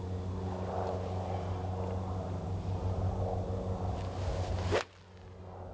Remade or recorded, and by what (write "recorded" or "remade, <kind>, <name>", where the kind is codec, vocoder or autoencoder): recorded